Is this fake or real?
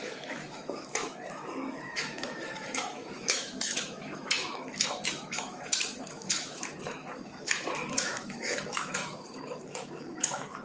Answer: fake